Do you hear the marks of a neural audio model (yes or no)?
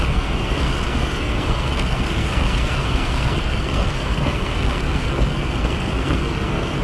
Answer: yes